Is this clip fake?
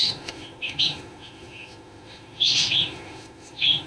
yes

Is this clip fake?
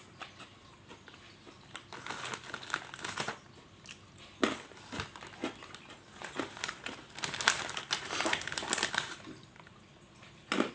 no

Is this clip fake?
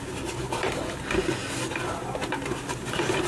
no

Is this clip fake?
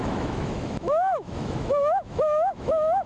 yes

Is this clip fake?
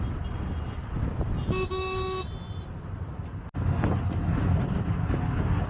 no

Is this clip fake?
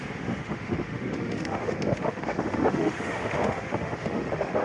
yes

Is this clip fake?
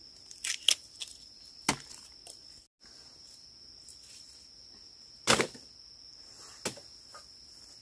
no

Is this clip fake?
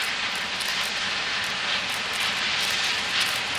no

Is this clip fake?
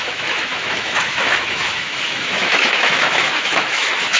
yes